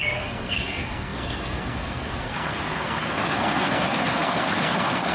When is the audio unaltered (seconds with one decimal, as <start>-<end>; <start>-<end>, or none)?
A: none